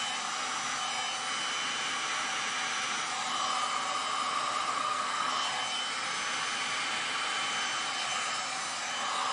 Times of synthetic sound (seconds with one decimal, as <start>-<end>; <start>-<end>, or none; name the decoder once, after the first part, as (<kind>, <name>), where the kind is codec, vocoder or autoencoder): 4.7-5.3 (codec, SNAC)